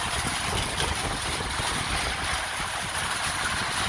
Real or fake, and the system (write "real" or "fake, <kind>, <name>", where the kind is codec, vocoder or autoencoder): real